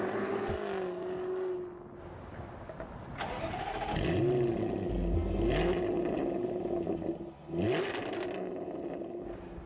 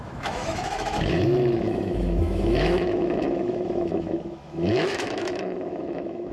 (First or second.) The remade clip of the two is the second